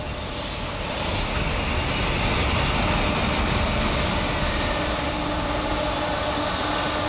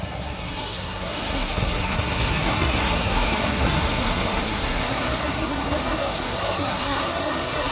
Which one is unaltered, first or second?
first